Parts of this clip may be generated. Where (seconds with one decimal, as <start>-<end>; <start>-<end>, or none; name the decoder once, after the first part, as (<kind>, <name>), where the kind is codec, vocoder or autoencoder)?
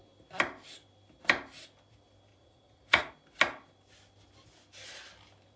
2.3-3.1 (vocoder, Vocos)